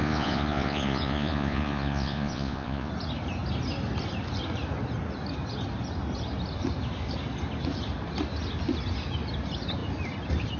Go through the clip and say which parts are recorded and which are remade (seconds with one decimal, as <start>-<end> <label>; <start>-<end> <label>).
0.0-2.9 remade; 2.9-10.6 recorded